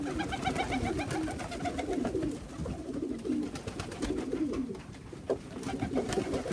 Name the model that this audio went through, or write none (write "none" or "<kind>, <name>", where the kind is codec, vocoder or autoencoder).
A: none